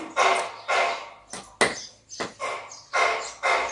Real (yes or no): yes